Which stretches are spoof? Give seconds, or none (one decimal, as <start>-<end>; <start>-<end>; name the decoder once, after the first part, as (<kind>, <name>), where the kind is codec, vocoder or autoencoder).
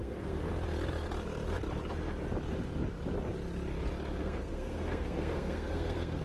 0.0-0.5 (codec, SNAC); 4.2-6.2